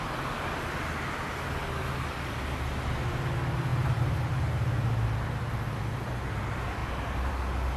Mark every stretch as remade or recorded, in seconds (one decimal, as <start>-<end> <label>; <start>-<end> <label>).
0.0-1.6 recorded; 1.6-2.4 remade; 2.4-3.7 recorded; 3.7-5.8 remade; 5.8-7.8 recorded